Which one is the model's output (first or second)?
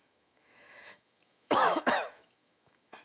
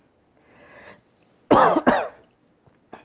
first